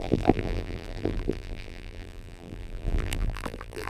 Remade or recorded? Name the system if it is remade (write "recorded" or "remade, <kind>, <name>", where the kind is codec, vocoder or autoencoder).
remade, vocoder, BigVGAN v2